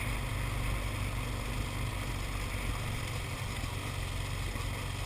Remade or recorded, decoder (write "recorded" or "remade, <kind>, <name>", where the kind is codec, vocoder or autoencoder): recorded